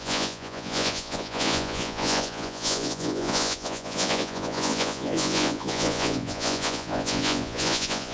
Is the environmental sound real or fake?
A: fake